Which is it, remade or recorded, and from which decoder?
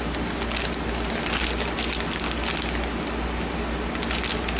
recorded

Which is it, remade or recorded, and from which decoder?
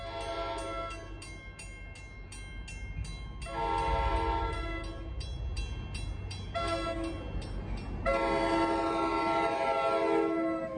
recorded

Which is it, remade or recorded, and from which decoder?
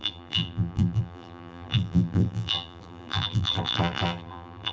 remade, vocoder, BigVGAN v2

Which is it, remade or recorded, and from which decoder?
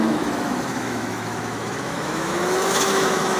remade, autoencoder, DAC-VAE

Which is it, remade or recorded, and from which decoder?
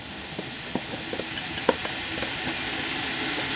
recorded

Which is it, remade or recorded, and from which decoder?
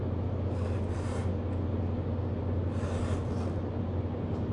recorded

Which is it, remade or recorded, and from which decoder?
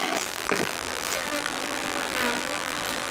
remade, vocoder, BigVGAN v2